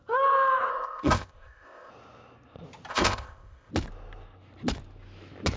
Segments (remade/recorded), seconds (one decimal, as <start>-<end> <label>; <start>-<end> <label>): 0.0-0.7 recorded; 0.7-1.9 remade; 1.9-2.9 recorded; 2.9-3.7 remade; 3.7-5.6 recorded